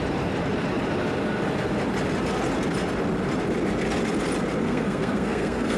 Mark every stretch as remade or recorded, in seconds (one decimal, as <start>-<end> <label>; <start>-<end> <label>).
0.0-4.6 recorded; 4.6-5.8 remade